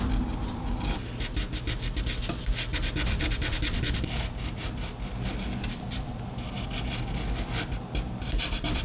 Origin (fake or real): real